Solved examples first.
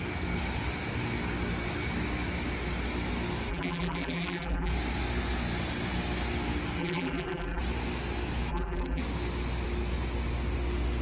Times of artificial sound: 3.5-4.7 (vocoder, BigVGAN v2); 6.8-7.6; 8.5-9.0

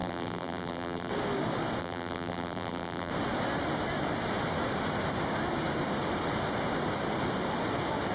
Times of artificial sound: 0.0-1.1 (vocoder, BigVGAN v2); 1.8-3.1

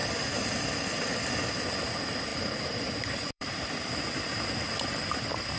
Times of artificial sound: 2.3-3.9 (vocoder, BigVGAN v2)

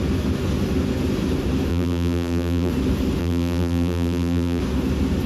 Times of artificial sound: 1.7-2.7 (vocoder, BigVGAN v2); 3.2-4.6